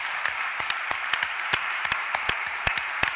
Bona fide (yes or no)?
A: no